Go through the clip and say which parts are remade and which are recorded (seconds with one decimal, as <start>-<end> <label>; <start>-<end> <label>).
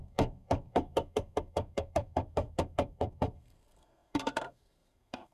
0.0-5.3 remade